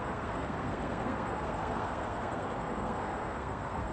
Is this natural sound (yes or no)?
no